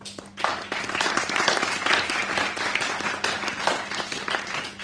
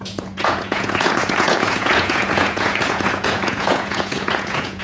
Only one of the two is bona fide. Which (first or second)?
first